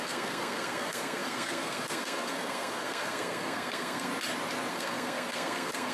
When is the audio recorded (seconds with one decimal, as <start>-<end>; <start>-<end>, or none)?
4.1-4.7